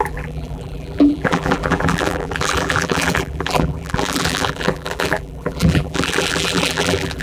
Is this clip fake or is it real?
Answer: fake